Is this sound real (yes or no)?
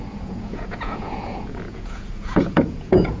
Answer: no